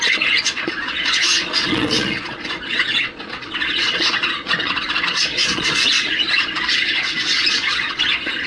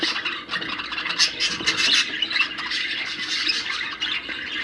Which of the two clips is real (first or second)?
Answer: second